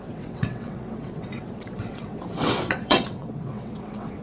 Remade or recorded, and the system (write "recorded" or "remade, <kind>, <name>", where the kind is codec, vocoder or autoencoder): remade, vocoder, WaveNeXt